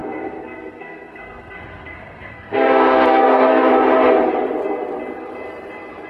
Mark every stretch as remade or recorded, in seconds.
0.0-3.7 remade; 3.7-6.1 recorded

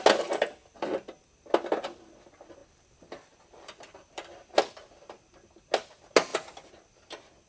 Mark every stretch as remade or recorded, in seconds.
0.0-2.6 recorded; 2.6-4.7 remade; 4.7-7.5 recorded

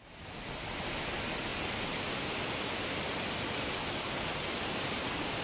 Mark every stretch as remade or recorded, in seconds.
0.0-5.4 recorded

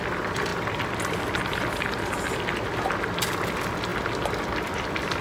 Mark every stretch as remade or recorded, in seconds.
0.0-5.2 recorded